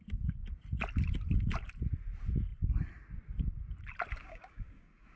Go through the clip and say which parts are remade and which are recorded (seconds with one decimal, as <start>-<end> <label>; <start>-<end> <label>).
0.0-4.2 recorded; 4.2-5.2 remade